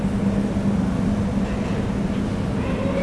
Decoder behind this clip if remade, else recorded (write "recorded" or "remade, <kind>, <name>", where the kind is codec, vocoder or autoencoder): recorded